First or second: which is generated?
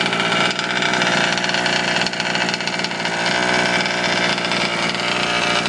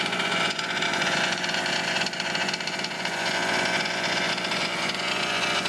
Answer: second